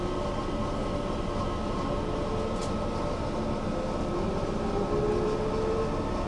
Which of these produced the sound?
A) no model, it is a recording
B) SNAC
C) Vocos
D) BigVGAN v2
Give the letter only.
A